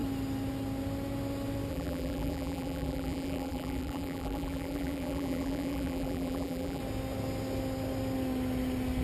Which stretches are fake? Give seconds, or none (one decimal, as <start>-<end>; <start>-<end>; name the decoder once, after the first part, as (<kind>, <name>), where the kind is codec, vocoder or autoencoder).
1.7-6.8 (vocoder, BigVGAN v2)